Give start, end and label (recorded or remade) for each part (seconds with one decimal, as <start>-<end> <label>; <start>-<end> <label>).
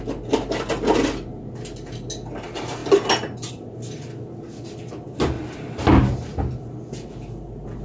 0.0-7.8 recorded